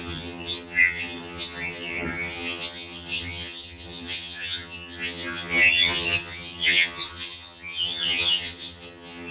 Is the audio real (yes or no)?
no